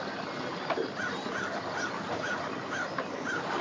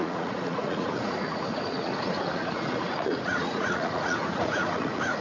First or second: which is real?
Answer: first